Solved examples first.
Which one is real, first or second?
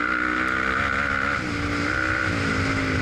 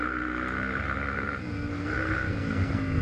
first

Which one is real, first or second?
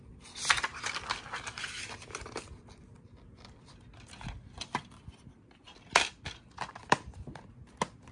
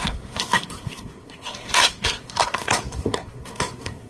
first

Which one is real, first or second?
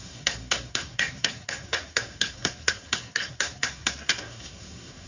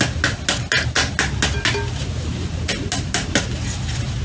second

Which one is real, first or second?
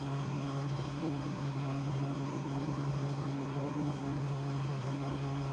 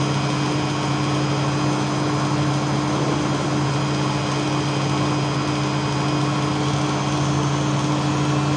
second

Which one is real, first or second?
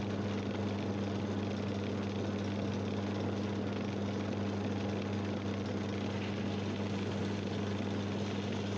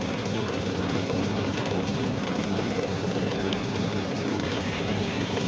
first